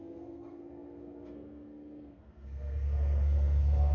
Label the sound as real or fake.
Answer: fake